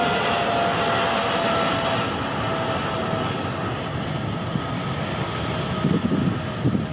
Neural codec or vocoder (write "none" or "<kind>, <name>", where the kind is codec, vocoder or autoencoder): none